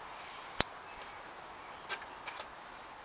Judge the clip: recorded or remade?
recorded